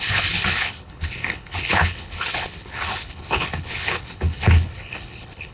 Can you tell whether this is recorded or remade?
remade